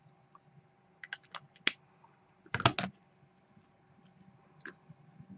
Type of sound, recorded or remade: recorded